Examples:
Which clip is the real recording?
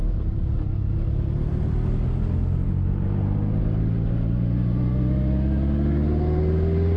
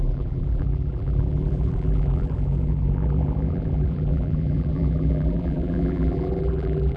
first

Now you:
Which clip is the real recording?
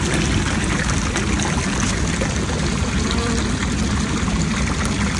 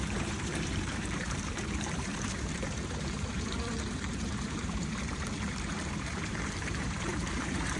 first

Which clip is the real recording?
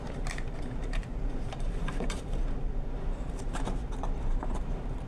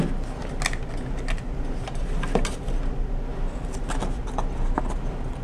second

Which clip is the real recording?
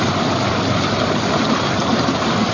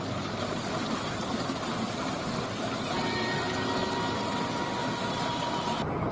second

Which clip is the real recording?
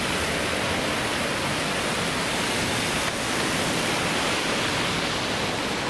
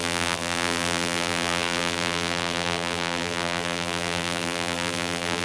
first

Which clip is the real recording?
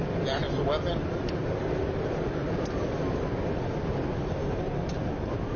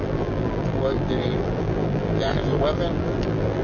first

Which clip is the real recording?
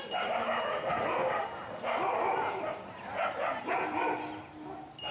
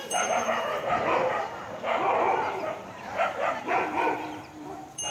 first